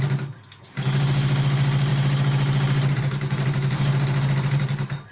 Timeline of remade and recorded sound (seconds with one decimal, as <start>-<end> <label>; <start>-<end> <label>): 0.0-5.1 recorded